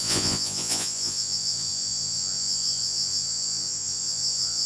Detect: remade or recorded remade